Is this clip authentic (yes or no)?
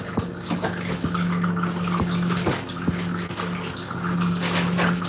yes